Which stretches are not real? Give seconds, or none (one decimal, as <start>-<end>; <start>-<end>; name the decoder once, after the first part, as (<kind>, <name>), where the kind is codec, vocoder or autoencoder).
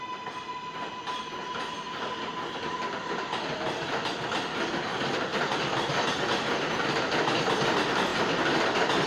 none